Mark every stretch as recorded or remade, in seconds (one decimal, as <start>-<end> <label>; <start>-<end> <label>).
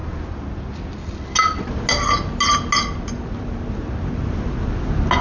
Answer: 0.0-5.2 recorded